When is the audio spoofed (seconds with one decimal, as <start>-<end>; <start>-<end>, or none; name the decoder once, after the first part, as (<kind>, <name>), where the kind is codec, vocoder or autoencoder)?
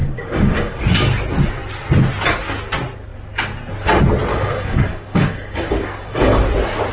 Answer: 0.0-0.8 (codec, DAC); 4.3-6.4